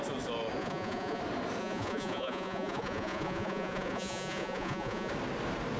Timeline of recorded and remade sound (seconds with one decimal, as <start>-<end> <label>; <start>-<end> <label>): 0.0-0.6 recorded; 0.6-1.2 remade; 1.2-1.6 recorded; 1.6-5.1 remade; 5.1-5.8 recorded